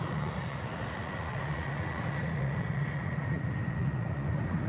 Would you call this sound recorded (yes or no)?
no